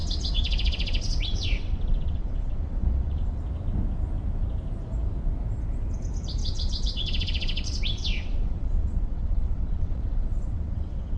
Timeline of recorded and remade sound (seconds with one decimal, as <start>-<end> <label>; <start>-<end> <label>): 0.0-3.4 remade; 3.4-6.4 recorded; 6.4-11.2 remade